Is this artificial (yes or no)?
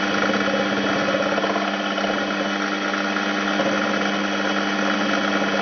no